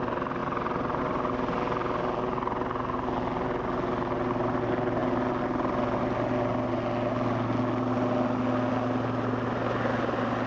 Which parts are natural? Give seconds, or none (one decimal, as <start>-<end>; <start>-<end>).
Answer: 0.0-0.4; 1.0-10.5